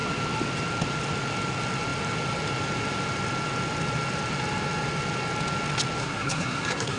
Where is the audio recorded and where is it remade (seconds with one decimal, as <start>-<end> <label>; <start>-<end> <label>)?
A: 0.0-6.0 recorded; 6.0-7.0 remade